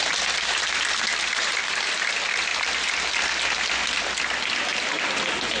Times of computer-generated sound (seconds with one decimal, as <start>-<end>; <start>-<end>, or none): 1.1-1.9